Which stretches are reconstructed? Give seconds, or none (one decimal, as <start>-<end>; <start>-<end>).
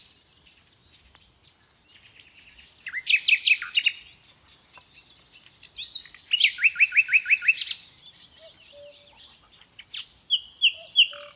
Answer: none